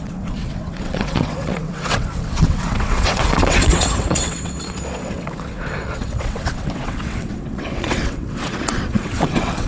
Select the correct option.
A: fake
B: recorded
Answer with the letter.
A